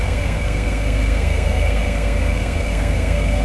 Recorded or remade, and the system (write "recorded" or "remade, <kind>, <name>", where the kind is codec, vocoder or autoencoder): remade, codec, SNAC